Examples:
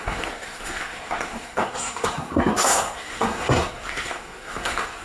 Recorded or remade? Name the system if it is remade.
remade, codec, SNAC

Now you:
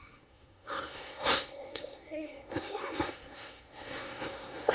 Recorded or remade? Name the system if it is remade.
remade, codec, SNAC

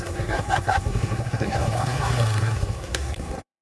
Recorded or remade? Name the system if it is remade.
remade, codec, SNAC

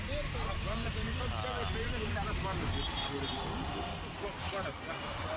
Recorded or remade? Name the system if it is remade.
recorded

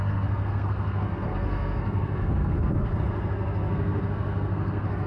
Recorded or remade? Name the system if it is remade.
remade, codec, SNAC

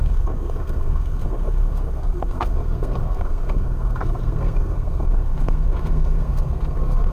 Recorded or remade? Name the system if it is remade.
remade, codec, SNAC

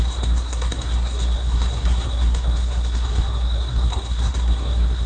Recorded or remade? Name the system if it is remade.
remade, codec, SNAC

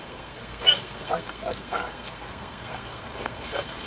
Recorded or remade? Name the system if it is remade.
remade, codec, SNAC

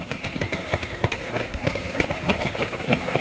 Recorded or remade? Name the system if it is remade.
remade, codec, SNAC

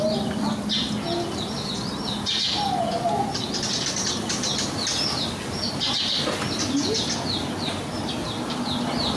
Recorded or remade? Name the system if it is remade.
recorded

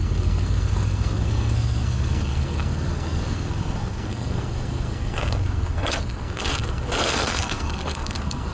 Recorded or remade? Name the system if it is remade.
remade, codec, SNAC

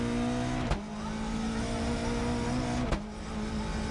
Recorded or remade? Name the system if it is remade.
recorded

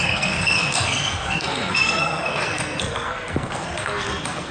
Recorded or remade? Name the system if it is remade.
remade, codec, SNAC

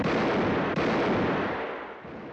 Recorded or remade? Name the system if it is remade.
recorded